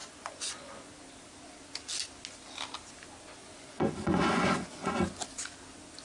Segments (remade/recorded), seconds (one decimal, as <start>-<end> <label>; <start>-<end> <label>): 0.0-0.9 remade; 0.9-3.4 recorded; 3.4-5.2 remade; 5.2-6.0 recorded